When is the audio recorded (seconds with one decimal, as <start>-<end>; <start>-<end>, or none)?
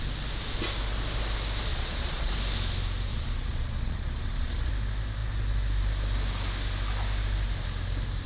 0.0-1.7; 2.3-3.1; 4.7-8.3